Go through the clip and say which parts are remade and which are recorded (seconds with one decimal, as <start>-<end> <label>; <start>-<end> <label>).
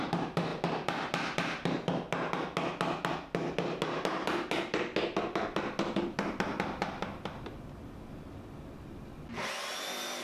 0.0-10.2 recorded